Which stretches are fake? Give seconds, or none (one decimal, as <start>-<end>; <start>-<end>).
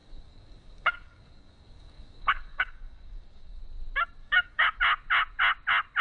0.0-3.6; 4.2-4.8